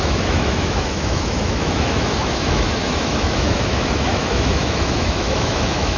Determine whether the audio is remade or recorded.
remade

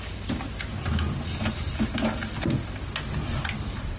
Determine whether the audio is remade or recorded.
recorded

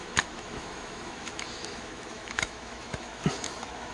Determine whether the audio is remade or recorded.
remade